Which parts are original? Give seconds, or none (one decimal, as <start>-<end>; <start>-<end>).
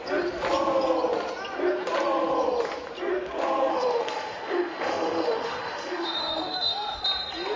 0.0-3.7; 7.0-7.6